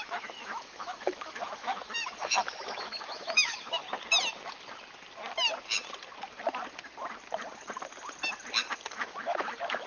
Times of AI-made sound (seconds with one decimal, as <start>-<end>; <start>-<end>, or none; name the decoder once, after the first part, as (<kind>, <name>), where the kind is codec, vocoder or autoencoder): 0.0-3.8 (autoencoder, DAC-VAE); 8.9-9.9